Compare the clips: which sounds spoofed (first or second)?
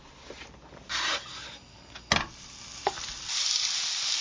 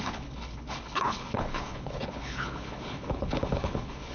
second